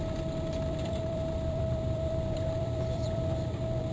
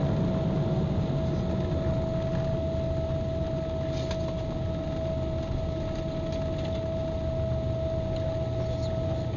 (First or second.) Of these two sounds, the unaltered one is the second